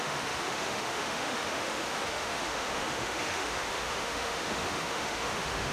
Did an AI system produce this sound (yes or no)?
yes